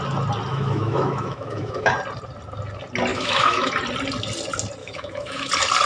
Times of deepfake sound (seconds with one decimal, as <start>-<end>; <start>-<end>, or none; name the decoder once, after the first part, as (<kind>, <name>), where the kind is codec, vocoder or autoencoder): 0.5-1.9 (autoencoder, DAC-VAE); 3.1-3.7; 4.8-5.5